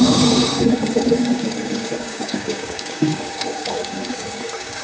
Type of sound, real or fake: fake